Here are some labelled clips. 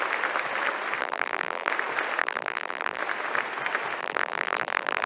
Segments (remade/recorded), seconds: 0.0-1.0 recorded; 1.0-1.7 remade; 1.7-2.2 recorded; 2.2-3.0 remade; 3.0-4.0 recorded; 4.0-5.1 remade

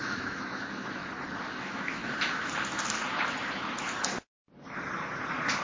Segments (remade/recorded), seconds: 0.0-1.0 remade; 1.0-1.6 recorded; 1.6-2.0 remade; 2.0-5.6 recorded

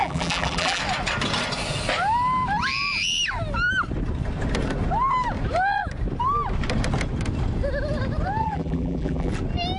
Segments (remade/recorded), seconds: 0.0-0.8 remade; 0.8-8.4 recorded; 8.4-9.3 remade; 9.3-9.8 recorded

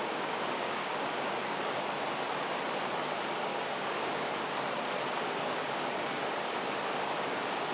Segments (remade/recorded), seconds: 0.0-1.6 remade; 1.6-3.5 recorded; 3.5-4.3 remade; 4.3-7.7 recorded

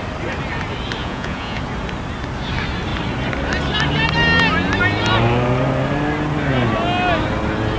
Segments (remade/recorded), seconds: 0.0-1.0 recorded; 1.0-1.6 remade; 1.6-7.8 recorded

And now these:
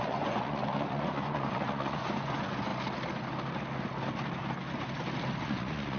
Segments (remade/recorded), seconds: 0.0-2.7 remade; 2.7-5.4 recorded; 5.4-6.0 remade

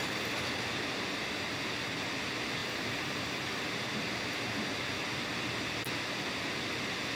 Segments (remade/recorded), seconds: 0.0-2.6 recorded; 2.6-3.6 remade; 3.6-7.2 recorded

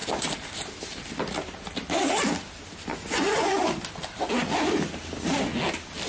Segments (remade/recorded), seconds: 0.0-2.9 recorded; 2.9-3.6 remade; 3.6-6.1 recorded